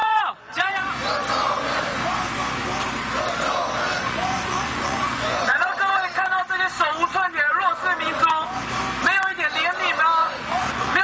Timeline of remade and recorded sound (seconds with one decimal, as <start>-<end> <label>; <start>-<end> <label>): 0.0-0.9 remade; 0.9-4.0 recorded; 4.0-5.7 remade; 5.7-10.2 recorded; 10.2-11.0 remade

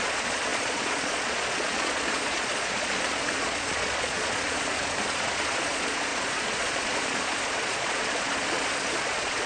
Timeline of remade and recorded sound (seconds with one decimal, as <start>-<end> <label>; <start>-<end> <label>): 0.0-9.5 remade

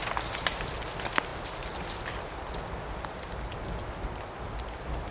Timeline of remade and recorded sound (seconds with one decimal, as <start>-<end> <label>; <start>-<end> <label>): 0.0-5.1 recorded

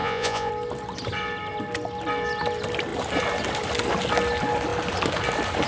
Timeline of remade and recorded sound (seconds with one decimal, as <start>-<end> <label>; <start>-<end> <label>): 0.0-0.5 remade; 0.5-5.7 recorded